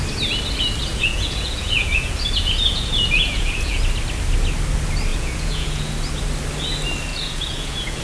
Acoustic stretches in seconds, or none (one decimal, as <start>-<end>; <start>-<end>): 0.0-0.9; 3.8-5.1; 5.9-7.1